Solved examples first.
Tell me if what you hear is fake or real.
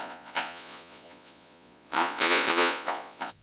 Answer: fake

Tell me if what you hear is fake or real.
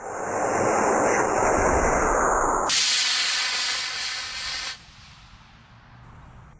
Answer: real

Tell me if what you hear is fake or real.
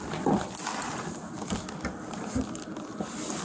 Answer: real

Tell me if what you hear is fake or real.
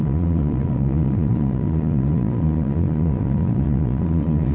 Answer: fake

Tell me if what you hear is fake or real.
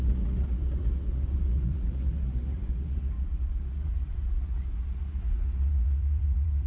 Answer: fake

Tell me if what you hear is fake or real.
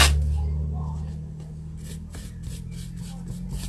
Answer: real